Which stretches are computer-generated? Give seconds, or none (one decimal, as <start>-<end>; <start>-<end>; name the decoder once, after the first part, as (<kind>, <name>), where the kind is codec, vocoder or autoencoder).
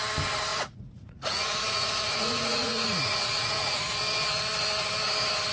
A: 0.5-3.8 (vocoder, Vocos)